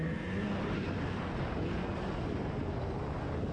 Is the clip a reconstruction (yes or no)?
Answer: no